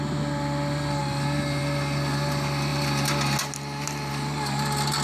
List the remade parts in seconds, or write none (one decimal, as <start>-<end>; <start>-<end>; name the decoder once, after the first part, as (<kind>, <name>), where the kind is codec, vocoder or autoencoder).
none

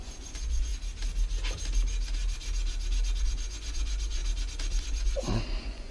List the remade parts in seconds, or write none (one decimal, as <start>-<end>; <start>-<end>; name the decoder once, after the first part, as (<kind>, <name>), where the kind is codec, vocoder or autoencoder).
0.0-0.7 (vocoder, Vocos); 3.2-4.2; 4.8-5.9

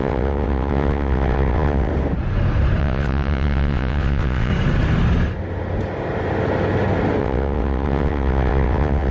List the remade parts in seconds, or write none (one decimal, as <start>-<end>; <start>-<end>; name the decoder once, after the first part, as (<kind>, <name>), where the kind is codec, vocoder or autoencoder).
0.0-1.9 (vocoder, WaveNeXt); 2.8-4.5; 7.2-9.1

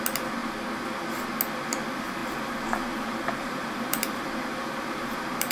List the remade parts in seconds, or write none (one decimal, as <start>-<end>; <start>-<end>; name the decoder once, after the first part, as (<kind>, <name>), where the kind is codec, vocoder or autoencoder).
2.2-5.5 (vocoder, BigVGAN v2)